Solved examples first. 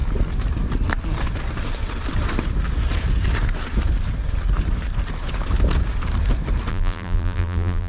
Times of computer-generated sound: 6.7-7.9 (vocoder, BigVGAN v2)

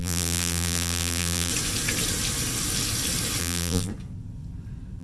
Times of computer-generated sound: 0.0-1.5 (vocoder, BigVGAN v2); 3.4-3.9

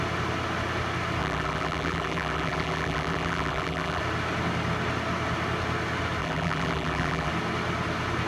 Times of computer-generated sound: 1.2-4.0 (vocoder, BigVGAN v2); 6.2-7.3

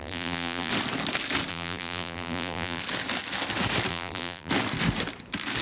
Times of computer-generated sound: 0.0-0.7 (vocoder, BigVGAN v2); 1.5-2.8; 3.9-4.5